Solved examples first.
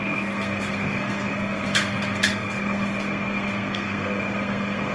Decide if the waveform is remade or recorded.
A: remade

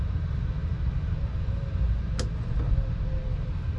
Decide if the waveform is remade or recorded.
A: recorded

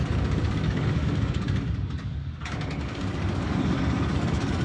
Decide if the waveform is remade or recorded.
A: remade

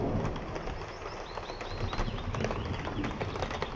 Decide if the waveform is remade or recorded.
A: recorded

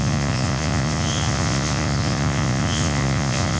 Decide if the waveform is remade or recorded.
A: remade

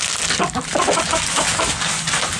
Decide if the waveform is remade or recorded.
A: recorded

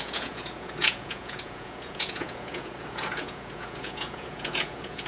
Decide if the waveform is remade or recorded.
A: remade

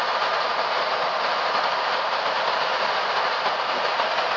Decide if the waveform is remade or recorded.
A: remade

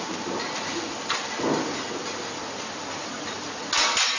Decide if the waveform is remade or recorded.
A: recorded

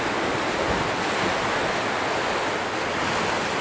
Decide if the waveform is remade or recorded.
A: recorded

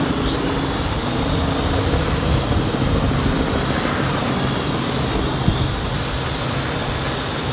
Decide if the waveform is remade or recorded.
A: recorded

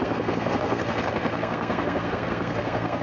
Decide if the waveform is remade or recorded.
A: remade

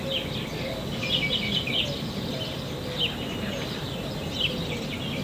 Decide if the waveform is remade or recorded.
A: recorded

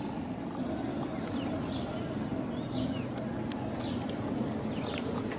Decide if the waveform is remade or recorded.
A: recorded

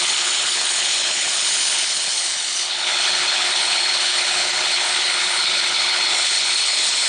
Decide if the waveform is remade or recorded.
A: remade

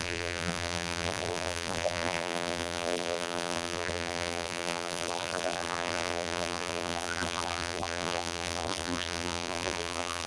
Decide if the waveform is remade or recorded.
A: remade